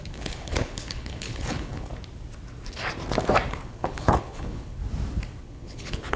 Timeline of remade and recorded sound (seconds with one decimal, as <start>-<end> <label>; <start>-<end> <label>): 0.0-1.9 remade; 1.9-3.5 recorded; 3.5-4.8 remade; 4.8-5.4 recorded; 5.4-6.2 remade